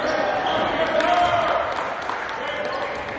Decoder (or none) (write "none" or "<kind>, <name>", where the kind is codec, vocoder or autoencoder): none